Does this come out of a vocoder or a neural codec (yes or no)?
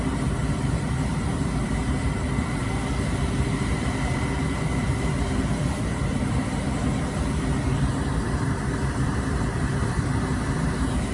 yes